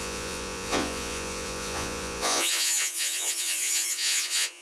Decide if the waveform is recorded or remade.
remade